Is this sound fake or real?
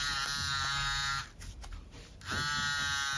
real